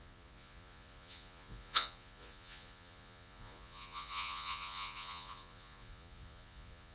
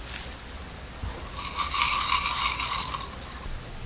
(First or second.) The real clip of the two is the second